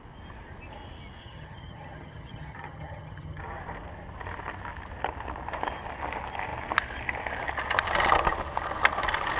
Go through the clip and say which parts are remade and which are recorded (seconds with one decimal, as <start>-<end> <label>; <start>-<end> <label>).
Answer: 0.0-1.2 recorded; 1.2-3.4 remade; 3.4-9.4 recorded

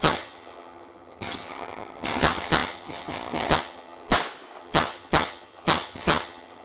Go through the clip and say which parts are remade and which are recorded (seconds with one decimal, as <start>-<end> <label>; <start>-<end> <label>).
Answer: 0.0-4.1 remade; 4.1-4.6 recorded; 4.6-6.6 remade